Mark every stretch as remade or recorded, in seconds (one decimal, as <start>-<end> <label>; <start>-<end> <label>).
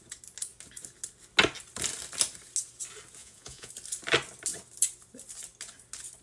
0.0-3.2 recorded; 3.2-3.7 remade; 3.7-6.2 recorded